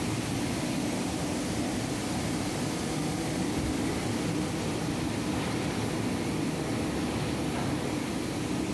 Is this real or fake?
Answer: real